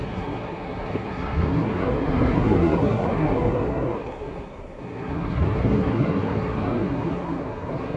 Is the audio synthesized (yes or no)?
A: yes